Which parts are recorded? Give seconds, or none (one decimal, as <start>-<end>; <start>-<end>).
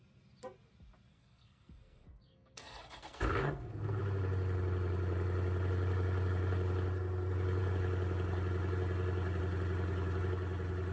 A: 0.0-1.1; 4.0-10.9